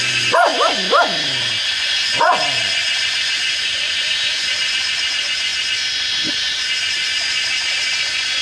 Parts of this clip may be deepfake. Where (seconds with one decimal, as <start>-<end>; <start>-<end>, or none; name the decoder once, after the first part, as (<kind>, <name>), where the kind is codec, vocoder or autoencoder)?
0.0-0.5 (vocoder, Vocos); 1.7-8.4